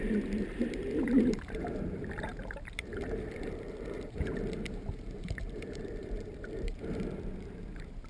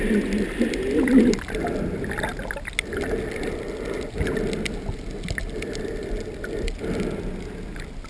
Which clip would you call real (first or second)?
second